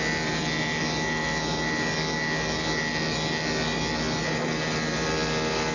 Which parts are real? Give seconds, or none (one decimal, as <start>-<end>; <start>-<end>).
0.0-5.7